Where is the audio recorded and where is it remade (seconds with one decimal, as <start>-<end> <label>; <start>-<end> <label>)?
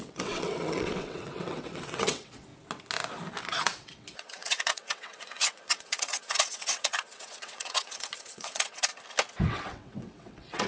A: 0.0-2.5 remade; 2.5-3.4 recorded; 3.4-8.9 remade; 8.9-9.5 recorded; 9.5-10.7 remade